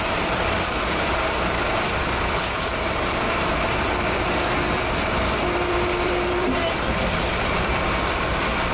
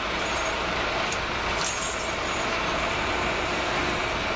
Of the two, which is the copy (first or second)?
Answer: first